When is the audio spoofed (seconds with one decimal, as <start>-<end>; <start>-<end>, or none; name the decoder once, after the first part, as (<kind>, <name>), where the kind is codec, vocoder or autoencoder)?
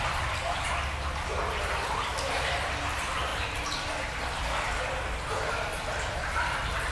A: none